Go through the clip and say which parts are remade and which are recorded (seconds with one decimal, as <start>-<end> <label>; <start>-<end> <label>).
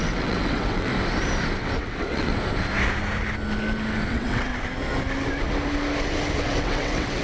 0.0-0.9 remade; 0.9-1.6 recorded; 1.6-2.3 remade; 2.3-4.1 recorded; 4.1-4.5 remade; 4.5-6.4 recorded; 6.4-7.2 remade